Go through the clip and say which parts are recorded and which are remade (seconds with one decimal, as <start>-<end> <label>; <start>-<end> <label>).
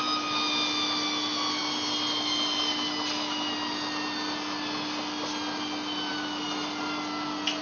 0.0-7.6 recorded